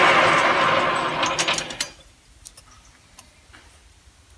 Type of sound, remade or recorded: recorded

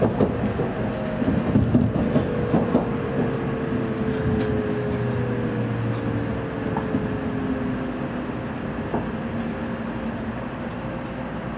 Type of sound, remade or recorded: recorded